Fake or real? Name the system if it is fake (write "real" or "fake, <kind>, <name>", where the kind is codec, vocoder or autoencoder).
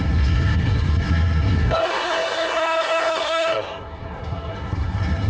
fake, codec, SNAC